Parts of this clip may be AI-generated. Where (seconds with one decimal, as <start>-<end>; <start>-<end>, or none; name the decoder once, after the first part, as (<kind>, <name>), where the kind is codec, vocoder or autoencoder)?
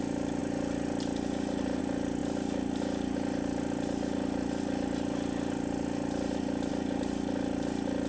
none